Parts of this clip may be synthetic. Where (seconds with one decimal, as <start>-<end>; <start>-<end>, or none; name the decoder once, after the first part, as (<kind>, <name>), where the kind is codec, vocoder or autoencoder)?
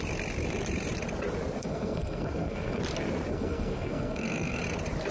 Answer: 1.6-2.8 (codec, SNAC); 3.3-4.6